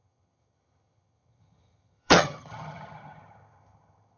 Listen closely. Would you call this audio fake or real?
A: fake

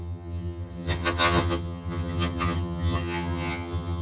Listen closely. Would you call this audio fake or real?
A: fake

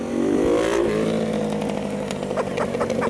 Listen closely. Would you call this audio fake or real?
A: real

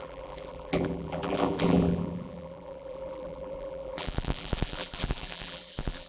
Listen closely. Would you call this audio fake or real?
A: fake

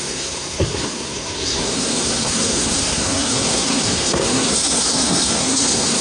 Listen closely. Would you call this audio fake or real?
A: fake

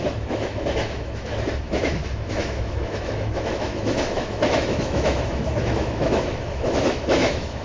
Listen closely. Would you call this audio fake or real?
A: fake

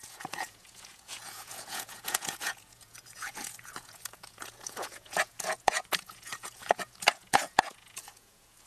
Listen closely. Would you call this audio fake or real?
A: fake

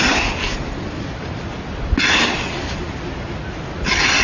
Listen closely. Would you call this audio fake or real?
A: real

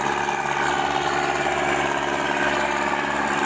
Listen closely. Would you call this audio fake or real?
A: real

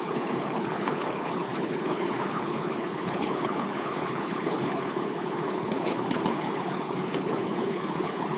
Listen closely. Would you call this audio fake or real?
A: fake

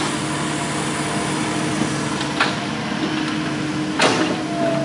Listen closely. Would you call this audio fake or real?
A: real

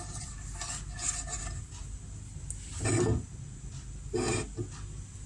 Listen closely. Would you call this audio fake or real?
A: real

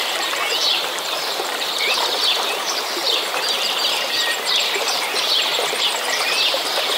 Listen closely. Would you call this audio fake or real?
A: fake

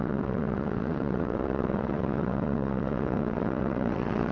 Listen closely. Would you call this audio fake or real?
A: fake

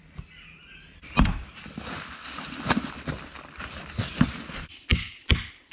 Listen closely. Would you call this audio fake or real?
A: real